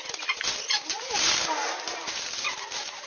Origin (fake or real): fake